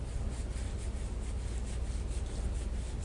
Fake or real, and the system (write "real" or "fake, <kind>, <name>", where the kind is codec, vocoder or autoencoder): real